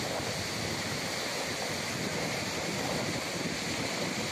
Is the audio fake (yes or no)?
no